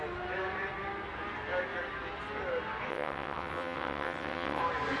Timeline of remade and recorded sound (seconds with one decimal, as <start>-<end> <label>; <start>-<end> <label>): 0.0-2.9 recorded; 2.9-4.6 remade; 4.6-5.0 recorded